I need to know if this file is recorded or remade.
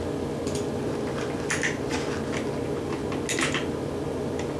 recorded